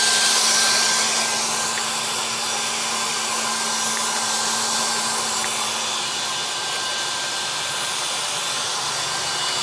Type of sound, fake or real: real